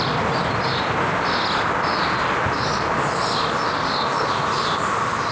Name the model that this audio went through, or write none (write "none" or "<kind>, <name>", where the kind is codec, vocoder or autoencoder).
none